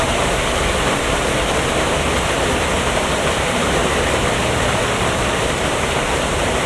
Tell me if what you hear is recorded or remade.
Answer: remade